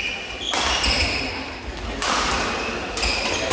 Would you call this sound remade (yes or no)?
no